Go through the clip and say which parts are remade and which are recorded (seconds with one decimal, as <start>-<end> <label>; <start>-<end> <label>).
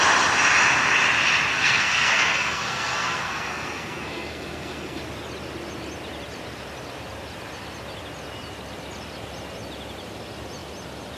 0.0-1.5 recorded; 1.5-5.0 remade; 5.0-11.2 recorded